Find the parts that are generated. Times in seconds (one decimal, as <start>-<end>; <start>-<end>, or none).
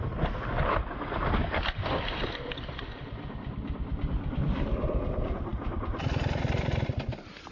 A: 0.0-7.5